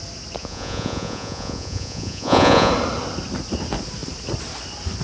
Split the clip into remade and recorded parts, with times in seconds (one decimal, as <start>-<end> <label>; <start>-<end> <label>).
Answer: 0.0-0.4 recorded; 0.4-2.7 remade; 2.7-5.0 recorded